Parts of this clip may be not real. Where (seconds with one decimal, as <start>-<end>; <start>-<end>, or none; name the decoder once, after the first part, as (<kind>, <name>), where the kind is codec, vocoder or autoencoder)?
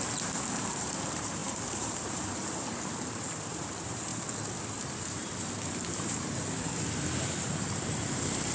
0.0-4.1 (vocoder, BigVGAN v2); 5.1-8.5